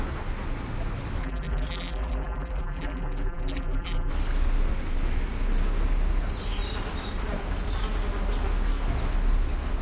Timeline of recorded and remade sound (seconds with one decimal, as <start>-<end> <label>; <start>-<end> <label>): 0.0-1.2 recorded; 1.2-4.1 remade; 4.1-9.8 recorded